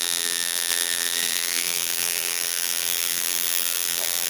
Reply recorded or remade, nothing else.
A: remade